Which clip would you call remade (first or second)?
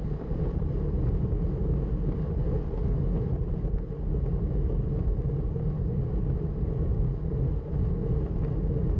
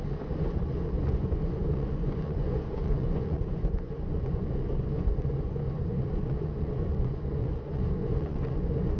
second